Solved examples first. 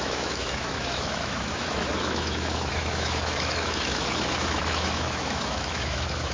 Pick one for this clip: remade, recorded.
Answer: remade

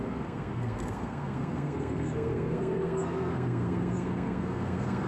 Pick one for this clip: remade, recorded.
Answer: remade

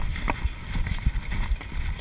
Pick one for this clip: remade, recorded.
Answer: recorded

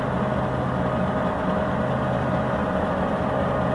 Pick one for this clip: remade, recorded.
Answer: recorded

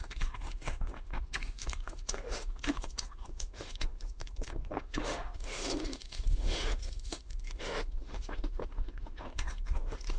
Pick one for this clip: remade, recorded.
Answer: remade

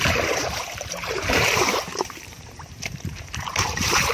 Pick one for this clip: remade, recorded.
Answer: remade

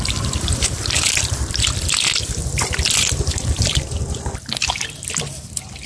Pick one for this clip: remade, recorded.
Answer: recorded